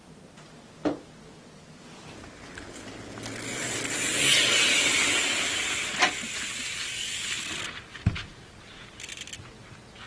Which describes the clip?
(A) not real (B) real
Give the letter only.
B